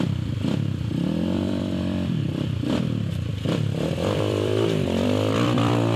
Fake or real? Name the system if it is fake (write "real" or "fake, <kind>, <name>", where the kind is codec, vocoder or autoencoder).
fake, vocoder, BigVGAN v2